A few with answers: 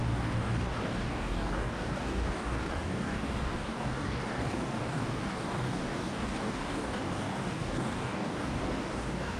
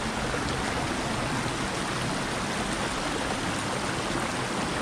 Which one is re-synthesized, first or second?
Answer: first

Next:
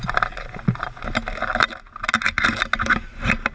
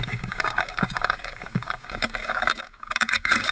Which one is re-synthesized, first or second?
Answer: second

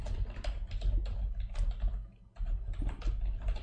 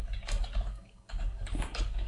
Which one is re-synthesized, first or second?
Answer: second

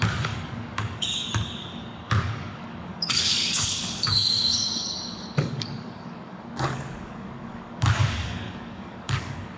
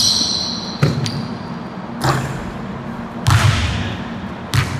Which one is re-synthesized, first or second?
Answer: first